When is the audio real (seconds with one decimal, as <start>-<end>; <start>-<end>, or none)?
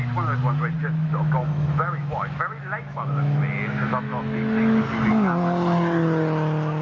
0.0-0.8; 3.4-3.9; 4.8-6.8